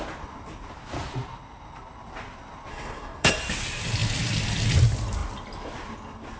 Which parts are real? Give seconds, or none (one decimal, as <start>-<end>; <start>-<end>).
0.0-2.7; 3.3-6.4